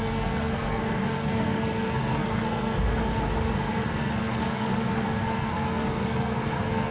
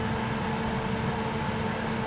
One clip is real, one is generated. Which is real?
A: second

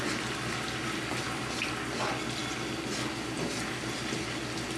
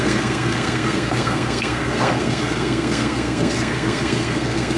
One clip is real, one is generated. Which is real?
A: first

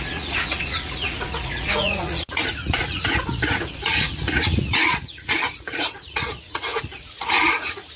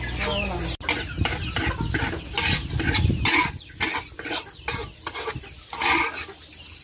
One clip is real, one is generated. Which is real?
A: second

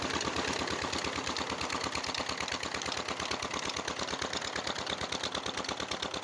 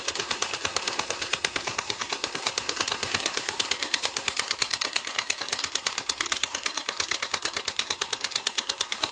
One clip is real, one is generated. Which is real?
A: first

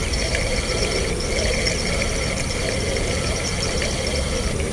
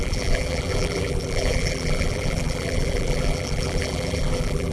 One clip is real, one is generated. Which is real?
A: first